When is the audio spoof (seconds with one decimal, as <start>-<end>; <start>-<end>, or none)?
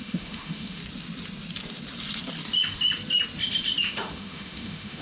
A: 0.0-0.8; 3.8-5.0